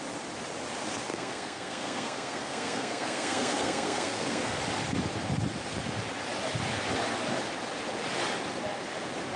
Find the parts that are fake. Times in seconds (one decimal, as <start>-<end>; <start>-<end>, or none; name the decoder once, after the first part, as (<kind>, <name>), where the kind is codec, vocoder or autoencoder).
1.1-4.6 (codec, SNAC)